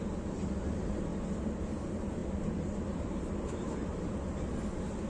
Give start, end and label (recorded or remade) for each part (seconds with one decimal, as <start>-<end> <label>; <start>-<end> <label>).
0.0-5.1 recorded